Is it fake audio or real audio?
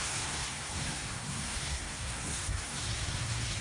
fake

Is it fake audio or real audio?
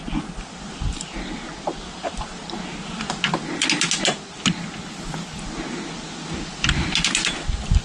real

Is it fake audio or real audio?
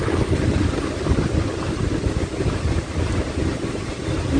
real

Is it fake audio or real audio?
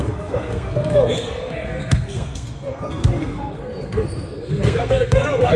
fake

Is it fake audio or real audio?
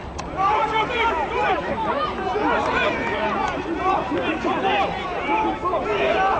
real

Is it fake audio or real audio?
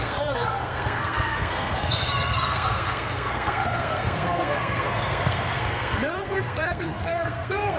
fake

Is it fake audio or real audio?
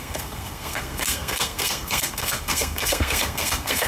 fake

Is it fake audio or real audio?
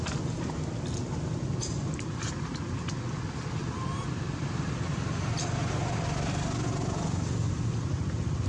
real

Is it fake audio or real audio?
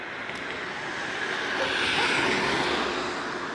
real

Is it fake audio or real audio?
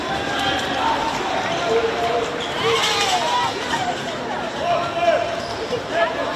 real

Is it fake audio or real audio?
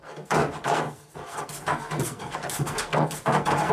fake